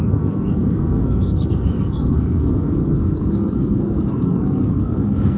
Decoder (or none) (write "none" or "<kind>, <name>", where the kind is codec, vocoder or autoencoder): codec, SNAC